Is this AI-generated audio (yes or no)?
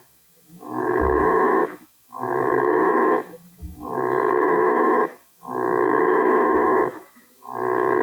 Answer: yes